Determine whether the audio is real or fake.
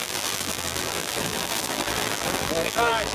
fake